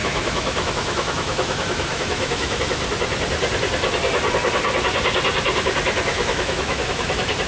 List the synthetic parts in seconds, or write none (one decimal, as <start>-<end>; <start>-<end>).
0.0-2.6; 6.1-7.1

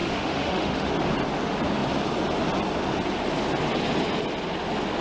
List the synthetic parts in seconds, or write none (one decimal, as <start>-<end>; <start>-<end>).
0.0-0.9

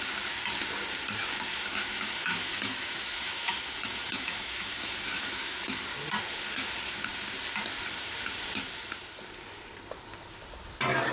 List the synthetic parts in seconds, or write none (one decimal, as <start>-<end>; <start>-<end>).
1.5-5.8

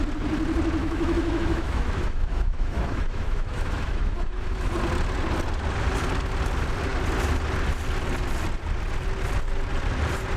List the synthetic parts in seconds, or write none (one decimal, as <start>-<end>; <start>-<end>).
0.8-4.7